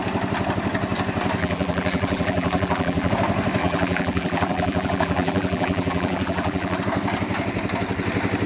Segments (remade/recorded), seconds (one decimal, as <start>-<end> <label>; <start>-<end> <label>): 0.0-1.4 recorded; 1.4-3.1 remade; 3.1-3.6 recorded; 3.6-6.8 remade; 6.8-8.5 recorded